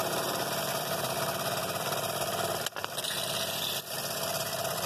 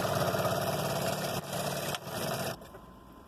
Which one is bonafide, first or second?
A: second